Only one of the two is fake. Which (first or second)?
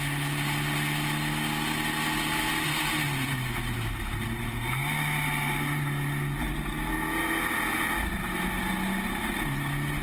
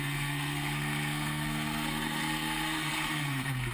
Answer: second